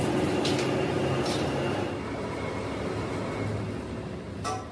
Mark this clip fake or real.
real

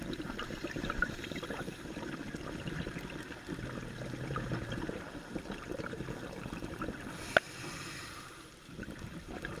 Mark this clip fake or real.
fake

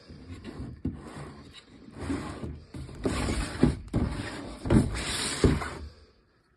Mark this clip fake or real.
fake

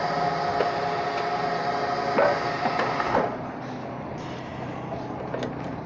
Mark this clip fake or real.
real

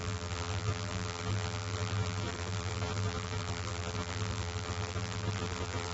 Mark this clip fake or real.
fake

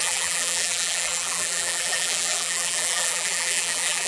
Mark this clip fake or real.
fake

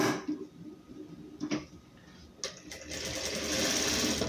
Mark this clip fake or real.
real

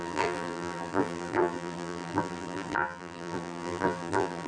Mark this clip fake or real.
fake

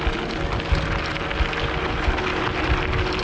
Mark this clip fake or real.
real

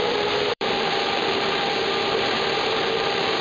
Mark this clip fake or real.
fake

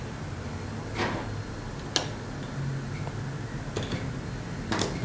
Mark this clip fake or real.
real